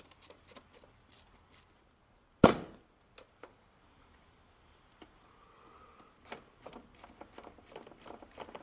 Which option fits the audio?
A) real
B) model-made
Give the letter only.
A